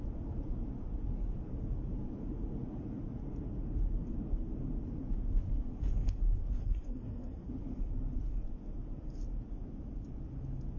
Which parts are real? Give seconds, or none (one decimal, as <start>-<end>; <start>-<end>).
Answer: 0.0-6.6; 7.5-10.8